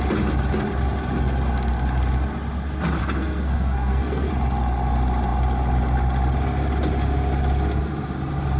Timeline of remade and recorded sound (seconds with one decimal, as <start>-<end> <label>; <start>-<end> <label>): 0.0-3.0 recorded; 3.0-4.3 remade; 4.3-8.6 recorded